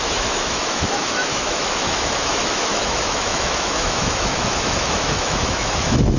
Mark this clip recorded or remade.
remade